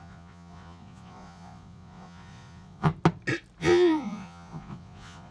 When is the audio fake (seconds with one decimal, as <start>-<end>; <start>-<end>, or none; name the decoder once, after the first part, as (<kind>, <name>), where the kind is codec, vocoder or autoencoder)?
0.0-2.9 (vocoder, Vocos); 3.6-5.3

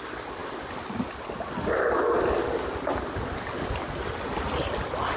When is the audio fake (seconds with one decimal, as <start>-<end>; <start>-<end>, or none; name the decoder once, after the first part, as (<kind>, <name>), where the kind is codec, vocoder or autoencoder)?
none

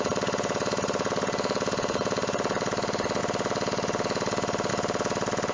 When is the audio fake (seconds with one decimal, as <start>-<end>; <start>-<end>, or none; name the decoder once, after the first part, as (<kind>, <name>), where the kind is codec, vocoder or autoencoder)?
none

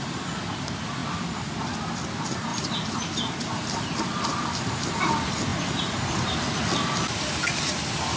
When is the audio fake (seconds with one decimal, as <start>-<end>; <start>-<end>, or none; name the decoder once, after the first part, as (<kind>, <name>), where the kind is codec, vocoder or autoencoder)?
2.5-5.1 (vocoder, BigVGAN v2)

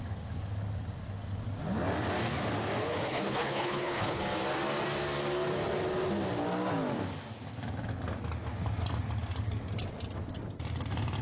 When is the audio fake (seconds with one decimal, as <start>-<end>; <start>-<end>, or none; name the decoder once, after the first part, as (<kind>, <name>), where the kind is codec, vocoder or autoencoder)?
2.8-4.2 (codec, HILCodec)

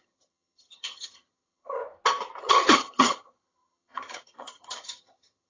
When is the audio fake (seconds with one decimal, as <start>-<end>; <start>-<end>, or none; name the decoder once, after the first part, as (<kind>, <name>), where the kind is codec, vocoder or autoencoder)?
0.0-1.8 (vocoder, HiFi-GAN); 2.4-5.5